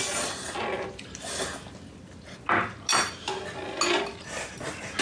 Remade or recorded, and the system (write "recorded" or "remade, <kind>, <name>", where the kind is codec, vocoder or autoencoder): recorded